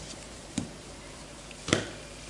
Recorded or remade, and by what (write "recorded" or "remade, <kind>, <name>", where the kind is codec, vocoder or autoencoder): remade, vocoder, BigVGAN v2